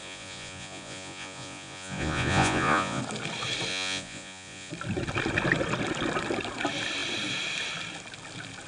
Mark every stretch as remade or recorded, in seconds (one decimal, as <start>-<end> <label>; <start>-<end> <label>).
0.0-3.0 remade; 3.0-3.7 recorded; 3.7-4.7 remade; 4.7-8.7 recorded